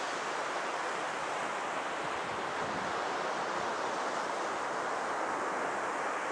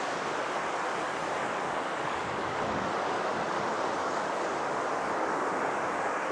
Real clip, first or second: first